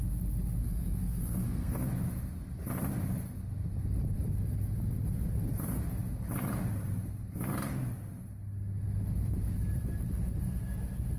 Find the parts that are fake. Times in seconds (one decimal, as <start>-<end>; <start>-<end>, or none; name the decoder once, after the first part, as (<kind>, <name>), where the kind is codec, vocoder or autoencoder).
0.6-1.9 (codec, SNAC)